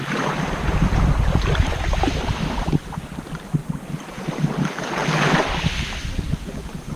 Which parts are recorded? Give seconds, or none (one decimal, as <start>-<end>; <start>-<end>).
1.1-7.0